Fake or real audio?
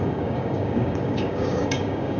fake